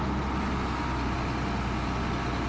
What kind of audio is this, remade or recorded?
recorded